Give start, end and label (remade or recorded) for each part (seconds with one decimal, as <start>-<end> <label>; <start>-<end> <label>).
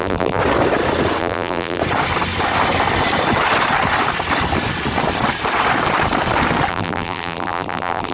0.0-0.4 remade; 0.4-1.2 recorded; 1.2-1.8 remade; 1.8-6.7 recorded; 6.7-8.1 remade